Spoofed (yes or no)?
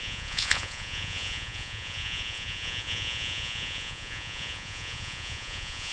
yes